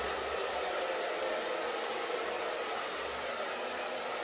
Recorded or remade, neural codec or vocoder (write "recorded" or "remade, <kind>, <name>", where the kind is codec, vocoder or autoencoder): recorded